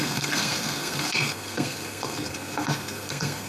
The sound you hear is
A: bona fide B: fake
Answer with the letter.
B